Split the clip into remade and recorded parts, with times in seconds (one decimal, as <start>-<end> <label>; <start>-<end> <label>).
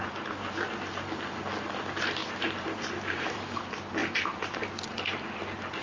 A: 0.0-2.2 recorded; 2.2-3.6 remade; 3.6-4.0 recorded; 4.0-4.8 remade; 4.8-5.8 recorded